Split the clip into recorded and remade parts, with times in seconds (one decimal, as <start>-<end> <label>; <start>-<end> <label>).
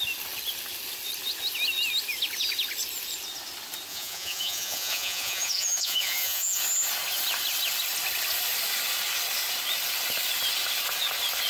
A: 0.0-3.9 recorded; 3.9-6.6 remade; 6.6-11.5 recorded